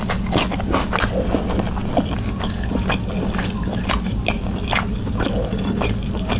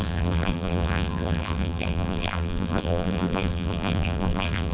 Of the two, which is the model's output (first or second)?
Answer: second